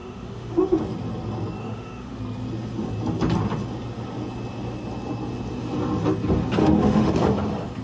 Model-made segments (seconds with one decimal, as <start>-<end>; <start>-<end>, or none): 0.0-0.8; 1.6-2.2; 6.6-7.1